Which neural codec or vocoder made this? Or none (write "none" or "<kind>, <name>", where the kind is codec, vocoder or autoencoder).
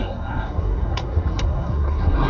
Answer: codec, SNAC